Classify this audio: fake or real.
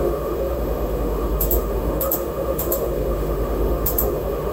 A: fake